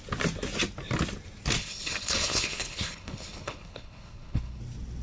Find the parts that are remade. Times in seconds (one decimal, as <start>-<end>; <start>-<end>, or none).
1.6-4.6